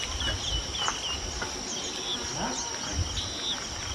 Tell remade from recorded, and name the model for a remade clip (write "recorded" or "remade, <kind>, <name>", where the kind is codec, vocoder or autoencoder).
recorded